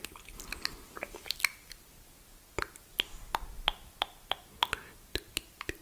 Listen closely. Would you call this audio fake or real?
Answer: real